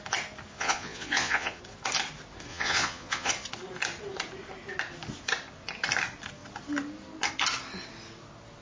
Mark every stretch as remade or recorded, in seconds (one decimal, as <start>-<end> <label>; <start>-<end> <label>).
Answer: 0.0-0.5 recorded; 0.5-1.6 remade; 1.6-2.5 recorded; 2.5-3.3 remade; 3.3-8.6 recorded